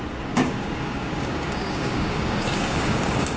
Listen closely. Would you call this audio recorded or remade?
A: remade